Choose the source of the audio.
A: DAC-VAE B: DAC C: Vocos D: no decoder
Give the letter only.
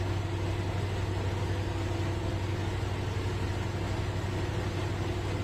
D